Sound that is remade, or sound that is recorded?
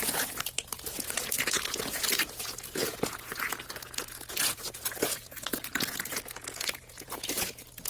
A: remade